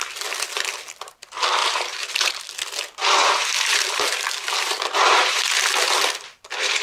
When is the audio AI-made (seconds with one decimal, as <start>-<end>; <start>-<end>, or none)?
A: 1.6-2.3; 3.2-3.9; 4.4-5.4